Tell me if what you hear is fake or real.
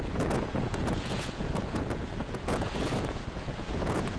fake